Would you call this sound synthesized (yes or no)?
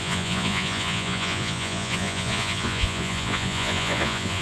yes